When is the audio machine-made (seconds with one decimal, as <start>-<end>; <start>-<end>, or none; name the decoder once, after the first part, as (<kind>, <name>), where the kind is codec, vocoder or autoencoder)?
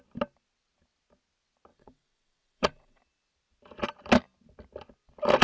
1.7-3.0 (vocoder, WaveNeXt)